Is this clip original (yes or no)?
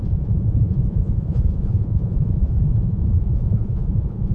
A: no